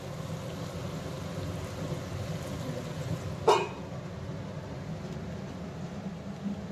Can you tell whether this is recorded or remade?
recorded